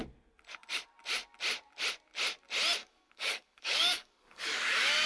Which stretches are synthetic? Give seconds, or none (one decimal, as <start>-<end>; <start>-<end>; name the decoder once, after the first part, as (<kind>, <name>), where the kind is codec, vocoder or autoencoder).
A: 2.8-5.1 (codec, DAC)